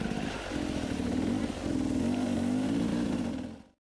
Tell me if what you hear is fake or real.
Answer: real